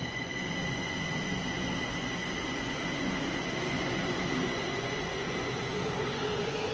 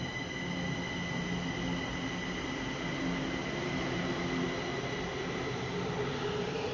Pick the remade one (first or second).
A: first